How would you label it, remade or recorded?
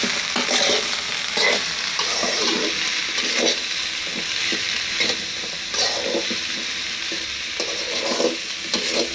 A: recorded